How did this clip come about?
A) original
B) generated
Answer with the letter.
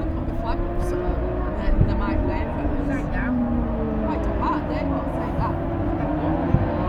A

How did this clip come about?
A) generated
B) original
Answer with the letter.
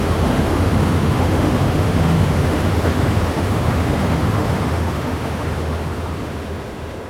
A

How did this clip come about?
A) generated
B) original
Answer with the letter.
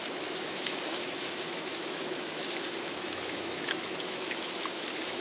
A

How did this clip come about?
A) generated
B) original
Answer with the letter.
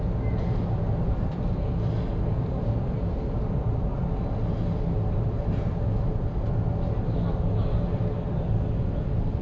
B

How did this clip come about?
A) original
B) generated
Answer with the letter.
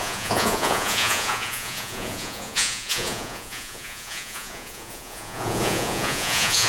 B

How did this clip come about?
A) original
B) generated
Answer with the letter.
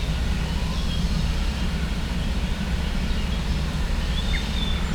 A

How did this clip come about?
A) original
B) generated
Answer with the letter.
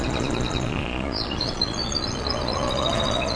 B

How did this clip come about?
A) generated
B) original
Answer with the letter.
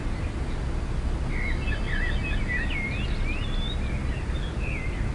B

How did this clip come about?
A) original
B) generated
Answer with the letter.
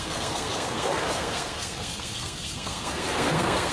B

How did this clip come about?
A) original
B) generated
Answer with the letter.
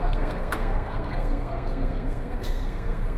B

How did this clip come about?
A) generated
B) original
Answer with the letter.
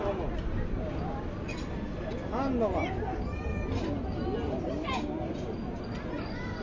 B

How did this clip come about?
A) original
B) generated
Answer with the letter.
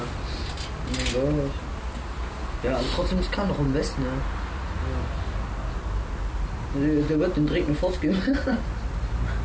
A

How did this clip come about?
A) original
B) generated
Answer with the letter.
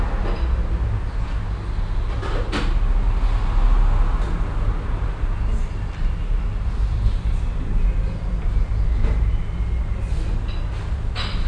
A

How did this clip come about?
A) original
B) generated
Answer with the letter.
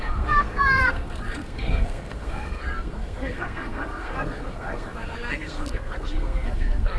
B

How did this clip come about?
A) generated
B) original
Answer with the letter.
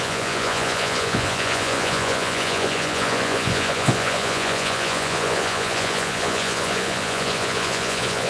A